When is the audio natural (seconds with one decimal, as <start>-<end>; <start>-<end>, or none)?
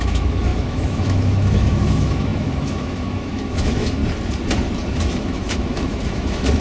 4.0-4.9